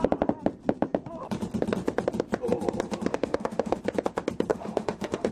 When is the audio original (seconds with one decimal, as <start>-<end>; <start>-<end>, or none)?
0.0-3.1; 3.8-4.5